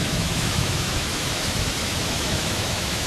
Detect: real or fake fake